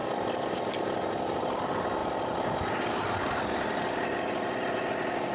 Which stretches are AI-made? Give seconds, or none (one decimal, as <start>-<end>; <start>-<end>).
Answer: none